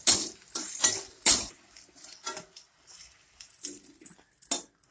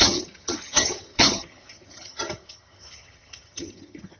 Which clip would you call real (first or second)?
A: first